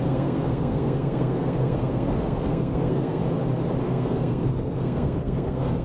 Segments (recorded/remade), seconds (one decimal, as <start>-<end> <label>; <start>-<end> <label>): 0.0-3.2 remade; 3.2-3.8 recorded; 3.8-5.8 remade